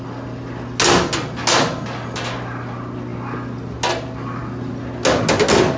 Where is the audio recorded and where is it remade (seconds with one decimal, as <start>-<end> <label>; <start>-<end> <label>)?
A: 0.0-5.8 recorded